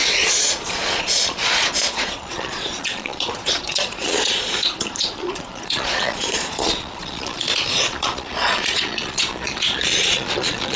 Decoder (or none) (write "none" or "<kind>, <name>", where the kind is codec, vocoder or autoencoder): vocoder, Vocos